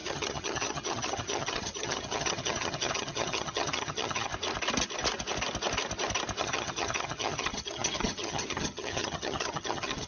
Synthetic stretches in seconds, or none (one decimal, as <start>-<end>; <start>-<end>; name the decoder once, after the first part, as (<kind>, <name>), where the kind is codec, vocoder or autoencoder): 0.0-4.3 (vocoder, HiFi-GAN); 6.4-10.1